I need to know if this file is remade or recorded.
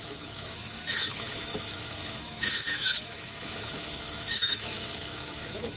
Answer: remade